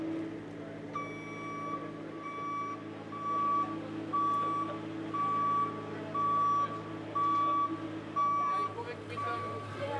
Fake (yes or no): no